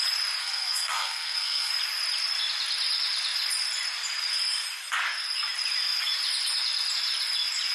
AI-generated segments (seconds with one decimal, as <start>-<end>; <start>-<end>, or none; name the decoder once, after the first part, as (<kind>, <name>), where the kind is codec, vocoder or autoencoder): 0.4-1.7 (codec, SNAC)